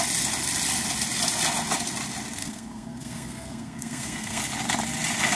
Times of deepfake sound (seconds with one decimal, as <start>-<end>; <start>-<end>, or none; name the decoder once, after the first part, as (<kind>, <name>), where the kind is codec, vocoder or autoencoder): 2.4-4.4 (codec, SNAC)